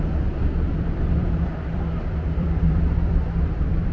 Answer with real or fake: fake